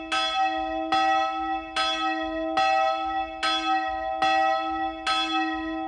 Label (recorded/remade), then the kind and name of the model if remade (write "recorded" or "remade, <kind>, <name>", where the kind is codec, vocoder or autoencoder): recorded